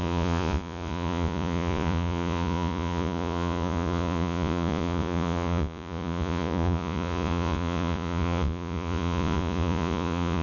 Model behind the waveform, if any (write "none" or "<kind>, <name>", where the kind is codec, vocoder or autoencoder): vocoder, Vocos